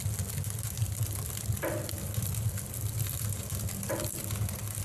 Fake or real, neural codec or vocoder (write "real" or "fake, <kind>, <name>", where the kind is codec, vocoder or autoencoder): real